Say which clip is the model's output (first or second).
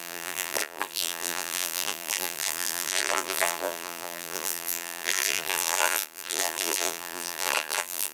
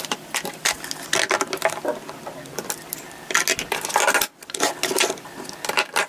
first